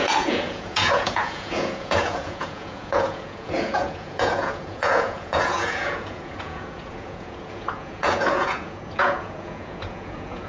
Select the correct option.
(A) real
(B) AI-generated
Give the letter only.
B